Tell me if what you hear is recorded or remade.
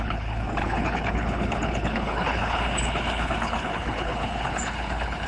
remade